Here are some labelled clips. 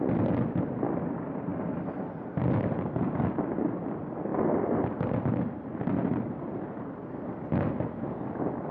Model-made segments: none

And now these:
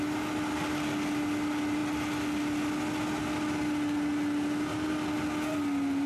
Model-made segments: none

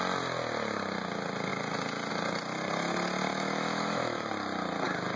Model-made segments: 3.3-4.3 (autoencoder, DAC-VAE)

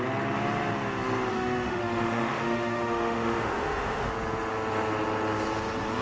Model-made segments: 1.3-4.1 (autoencoder, DAC-VAE)

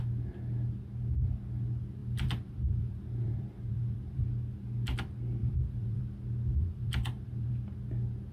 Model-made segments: 2.0-4.2 (vocoder, BigVGAN v2); 5.4-6.0; 6.5-7.5

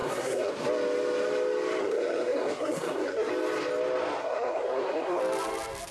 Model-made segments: 0.0-0.5 (codec, SNAC); 1.8-3.3; 4.2-5.2

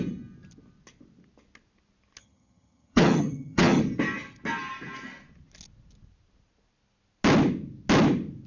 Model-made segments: 2.2-3.8 (vocoder, HiFi-GAN)

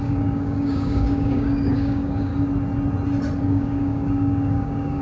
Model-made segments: 0.0-2.3 (codec, DAC); 3.4-5.0